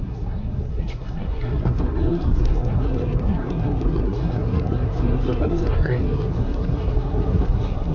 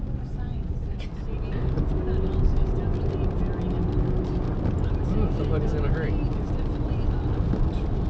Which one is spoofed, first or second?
first